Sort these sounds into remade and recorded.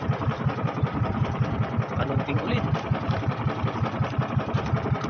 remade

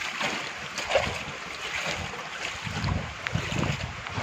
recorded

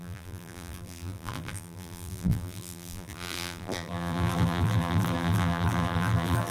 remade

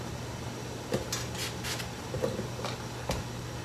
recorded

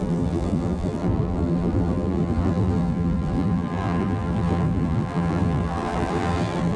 remade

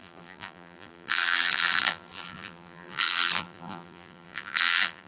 remade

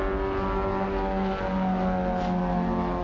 recorded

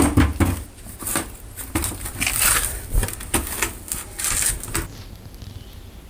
recorded